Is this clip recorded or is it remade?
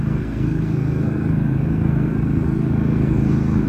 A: remade